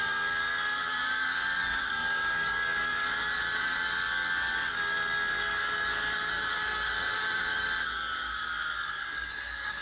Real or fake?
fake